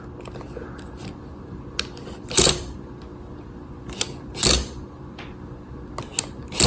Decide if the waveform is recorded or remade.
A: recorded